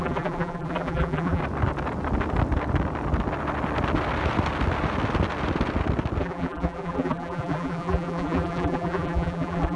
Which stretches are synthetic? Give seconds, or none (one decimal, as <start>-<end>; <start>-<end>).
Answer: 0.0-1.4; 6.2-9.8